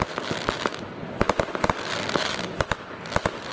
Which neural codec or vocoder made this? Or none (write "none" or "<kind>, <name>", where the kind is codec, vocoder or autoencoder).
none